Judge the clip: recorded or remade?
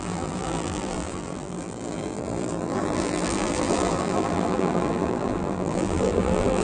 remade